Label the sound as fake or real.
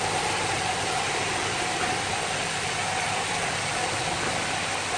real